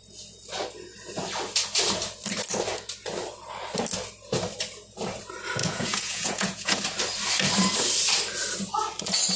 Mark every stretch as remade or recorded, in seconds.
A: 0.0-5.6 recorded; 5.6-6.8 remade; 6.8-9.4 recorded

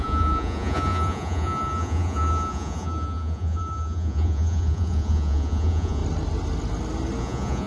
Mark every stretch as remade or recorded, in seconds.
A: 0.0-6.0 remade; 6.0-7.2 recorded; 7.2-7.7 remade

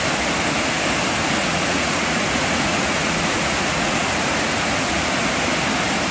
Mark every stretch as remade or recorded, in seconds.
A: 0.0-1.4 recorded; 1.4-5.1 remade; 5.1-6.1 recorded

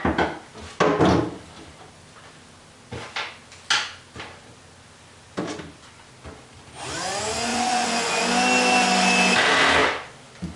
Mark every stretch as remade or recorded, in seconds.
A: 0.0-7.5 recorded; 7.5-8.2 remade; 8.2-10.6 recorded

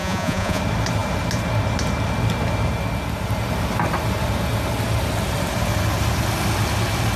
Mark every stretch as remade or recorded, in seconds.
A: 0.0-0.6 remade; 0.6-7.2 recorded

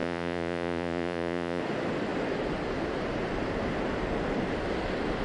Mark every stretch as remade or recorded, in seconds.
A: 0.0-1.6 remade; 1.6-5.2 recorded